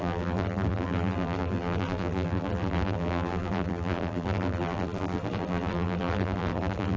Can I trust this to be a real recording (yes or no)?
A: no